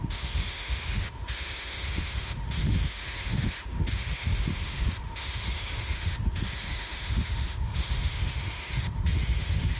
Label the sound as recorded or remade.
remade